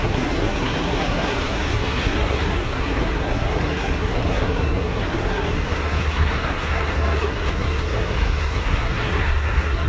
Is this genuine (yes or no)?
no